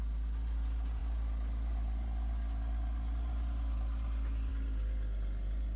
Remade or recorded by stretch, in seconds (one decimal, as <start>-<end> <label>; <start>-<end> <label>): 0.0-5.8 recorded